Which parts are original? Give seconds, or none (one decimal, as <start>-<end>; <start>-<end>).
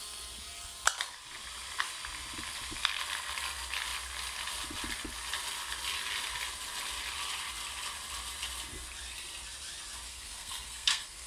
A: 0.0-10.1